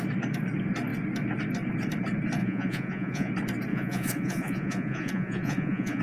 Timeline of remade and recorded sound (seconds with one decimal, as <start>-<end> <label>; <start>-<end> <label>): 0.0-2.4 recorded; 2.4-3.3 remade; 3.3-3.7 recorded; 3.7-6.0 remade